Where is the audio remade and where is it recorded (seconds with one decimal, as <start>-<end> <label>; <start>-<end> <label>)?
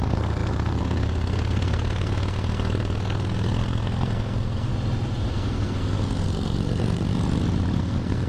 0.0-4.7 remade; 4.7-5.3 recorded; 5.3-7.1 remade; 7.1-7.8 recorded; 7.8-8.3 remade